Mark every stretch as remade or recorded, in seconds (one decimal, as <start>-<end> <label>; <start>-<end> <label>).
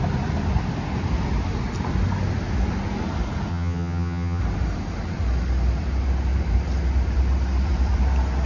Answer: 0.0-3.5 recorded; 3.5-4.4 remade; 4.4-8.5 recorded